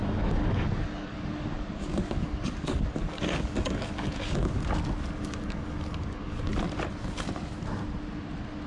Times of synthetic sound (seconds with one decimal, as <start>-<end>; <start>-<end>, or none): 0.0-4.6; 5.2-6.5